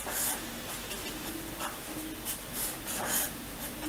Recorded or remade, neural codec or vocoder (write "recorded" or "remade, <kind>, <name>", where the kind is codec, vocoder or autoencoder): recorded